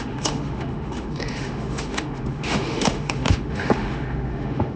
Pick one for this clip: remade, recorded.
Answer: remade